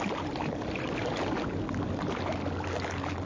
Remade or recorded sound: recorded